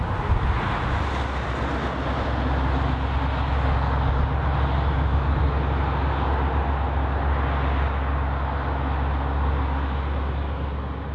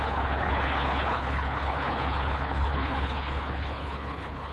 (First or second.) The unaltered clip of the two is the first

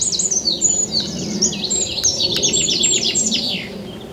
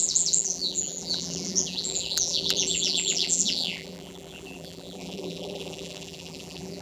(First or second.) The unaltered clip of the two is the first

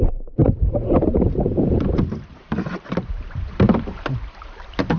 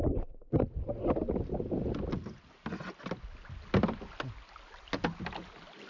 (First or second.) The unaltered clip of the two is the second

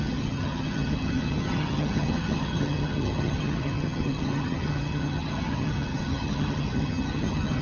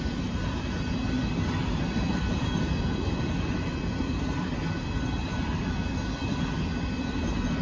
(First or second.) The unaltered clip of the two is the second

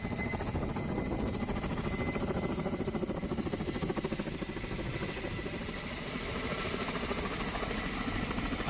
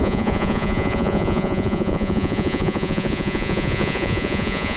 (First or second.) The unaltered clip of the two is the first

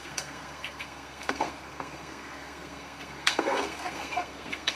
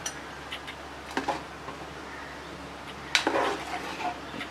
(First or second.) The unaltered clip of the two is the second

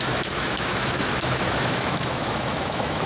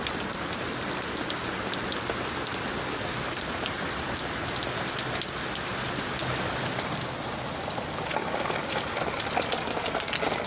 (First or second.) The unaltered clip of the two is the second